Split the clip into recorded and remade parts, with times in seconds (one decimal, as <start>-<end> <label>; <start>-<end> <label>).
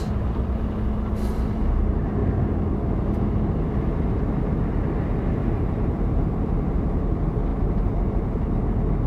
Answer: 0.0-5.4 recorded; 5.4-7.0 remade; 7.0-7.5 recorded; 7.5-8.6 remade; 8.6-9.1 recorded